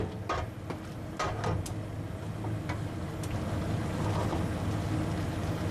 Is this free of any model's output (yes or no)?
yes